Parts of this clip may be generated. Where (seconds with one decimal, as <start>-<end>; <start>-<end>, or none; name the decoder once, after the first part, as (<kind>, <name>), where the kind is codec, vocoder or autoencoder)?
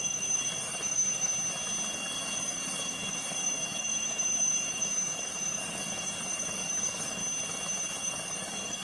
0.0-1.3 (codec, DAC); 1.9-7.2; 7.9-8.8